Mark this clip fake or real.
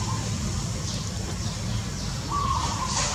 real